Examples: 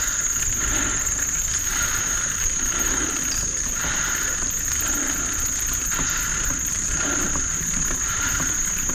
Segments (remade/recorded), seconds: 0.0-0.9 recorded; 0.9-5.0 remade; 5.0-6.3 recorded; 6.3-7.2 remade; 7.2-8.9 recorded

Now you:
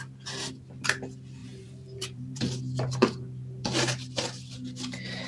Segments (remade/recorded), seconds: 0.0-1.4 recorded; 1.4-2.6 remade; 2.6-5.3 recorded

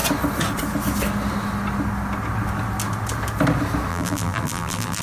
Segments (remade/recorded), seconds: 0.0-3.9 recorded; 3.9-5.0 remade

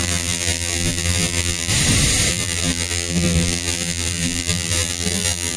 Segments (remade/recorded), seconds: 0.0-1.7 remade; 1.7-2.3 recorded; 2.3-5.6 remade

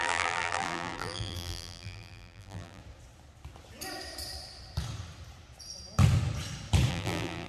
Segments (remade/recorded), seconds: 0.0-2.8 remade; 2.8-6.9 recorded; 6.9-7.5 remade